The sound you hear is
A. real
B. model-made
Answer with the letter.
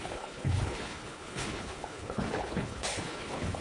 B